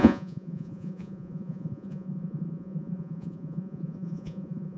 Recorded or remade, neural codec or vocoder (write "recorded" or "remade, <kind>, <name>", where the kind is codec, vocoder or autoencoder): remade, vocoder, Vocos